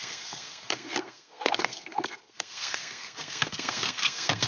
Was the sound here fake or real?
fake